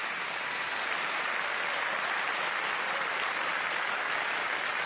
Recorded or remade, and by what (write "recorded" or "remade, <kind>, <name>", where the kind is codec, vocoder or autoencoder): recorded